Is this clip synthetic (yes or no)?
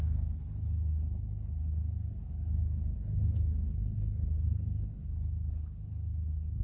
yes